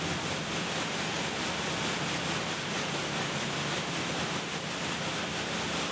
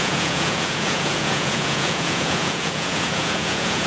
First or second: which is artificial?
second